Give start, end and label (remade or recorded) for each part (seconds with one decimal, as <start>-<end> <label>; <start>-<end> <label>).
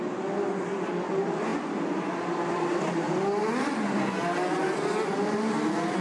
0.0-6.0 recorded